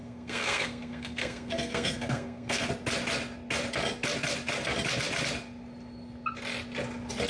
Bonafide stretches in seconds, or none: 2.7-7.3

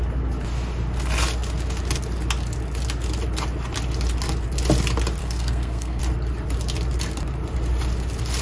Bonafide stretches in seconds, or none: 0.0-5.2; 6.0-8.4

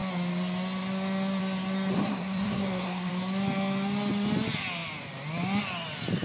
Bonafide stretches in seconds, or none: 0.0-1.9; 3.1-6.2

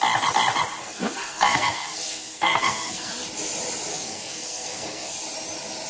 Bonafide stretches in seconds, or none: 0.0-0.8; 3.1-3.9; 5.1-5.9

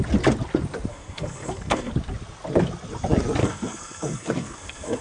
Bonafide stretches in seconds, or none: 0.0-0.9; 1.9-3.4

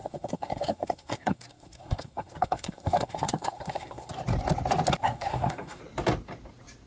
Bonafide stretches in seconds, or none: 4.1-5.0; 5.8-6.9